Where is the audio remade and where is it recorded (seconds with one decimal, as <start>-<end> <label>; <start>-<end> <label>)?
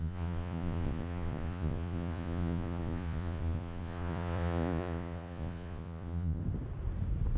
0.0-6.4 remade; 6.4-7.4 recorded